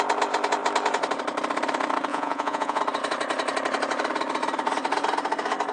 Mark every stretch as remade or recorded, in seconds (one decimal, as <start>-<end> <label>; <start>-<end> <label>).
0.0-2.1 recorded; 2.1-2.8 remade; 2.8-5.7 recorded